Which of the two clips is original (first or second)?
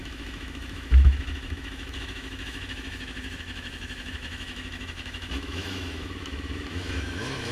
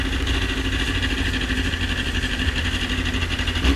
second